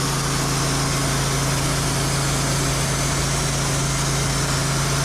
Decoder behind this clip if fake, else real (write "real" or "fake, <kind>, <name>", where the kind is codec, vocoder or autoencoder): real